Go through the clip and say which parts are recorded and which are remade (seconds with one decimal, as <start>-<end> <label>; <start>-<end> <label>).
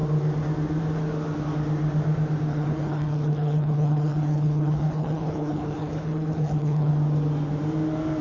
0.0-2.5 recorded; 2.5-6.9 remade; 6.9-8.2 recorded